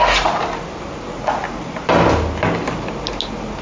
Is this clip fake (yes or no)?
no